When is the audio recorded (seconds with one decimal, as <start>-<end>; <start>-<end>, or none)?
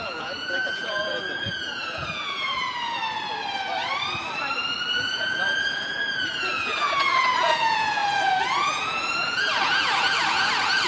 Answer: 3.0-4.9